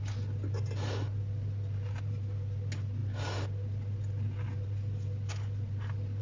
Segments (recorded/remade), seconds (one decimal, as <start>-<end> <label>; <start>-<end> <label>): 0.0-6.2 recorded